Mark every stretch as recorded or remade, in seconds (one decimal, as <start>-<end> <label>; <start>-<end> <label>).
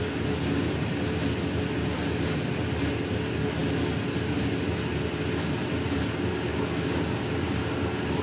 0.0-8.2 recorded